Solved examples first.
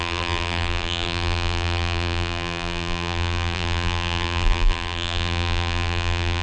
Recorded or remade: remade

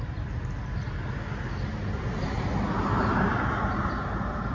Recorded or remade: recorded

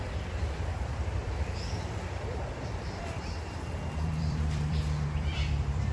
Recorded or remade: remade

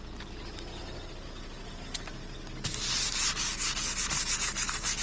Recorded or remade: recorded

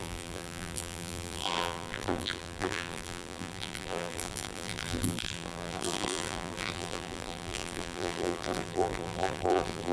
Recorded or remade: remade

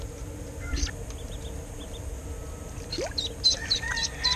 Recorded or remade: recorded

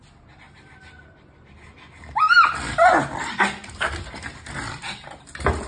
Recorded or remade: recorded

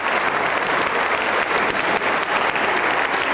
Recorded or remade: recorded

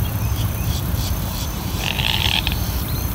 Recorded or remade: remade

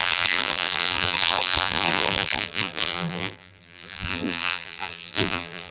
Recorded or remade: remade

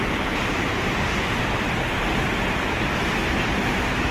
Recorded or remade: remade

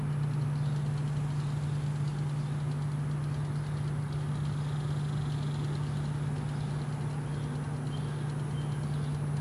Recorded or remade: recorded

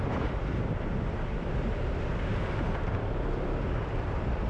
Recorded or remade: remade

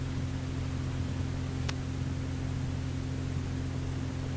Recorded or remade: recorded